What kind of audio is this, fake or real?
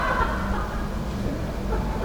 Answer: real